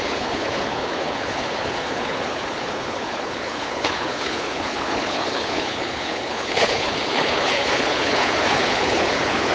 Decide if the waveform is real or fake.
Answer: fake